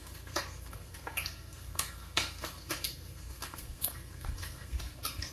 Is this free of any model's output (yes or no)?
no